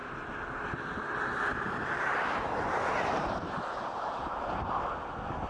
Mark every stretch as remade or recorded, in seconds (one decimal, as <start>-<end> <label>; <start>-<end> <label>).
0.0-1.5 recorded; 1.5-4.8 remade; 4.8-5.5 recorded